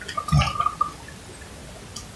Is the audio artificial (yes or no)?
no